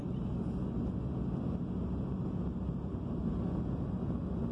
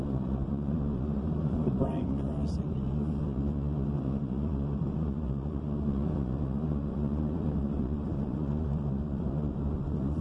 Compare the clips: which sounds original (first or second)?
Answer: first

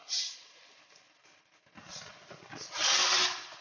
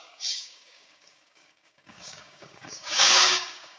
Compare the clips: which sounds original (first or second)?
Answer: first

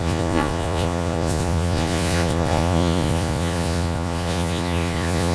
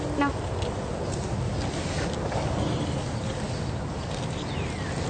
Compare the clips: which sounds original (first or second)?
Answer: second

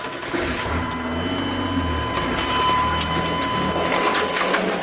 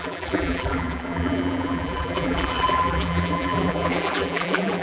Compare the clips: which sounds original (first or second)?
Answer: first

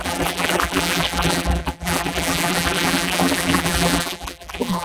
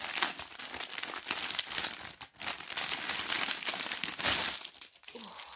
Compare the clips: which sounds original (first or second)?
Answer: second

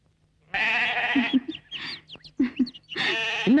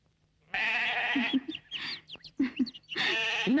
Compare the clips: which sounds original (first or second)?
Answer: first